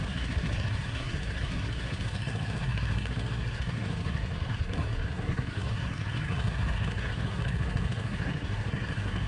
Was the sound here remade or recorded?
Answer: remade